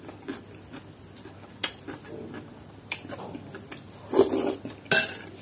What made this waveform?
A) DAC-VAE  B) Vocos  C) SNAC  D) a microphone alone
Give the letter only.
D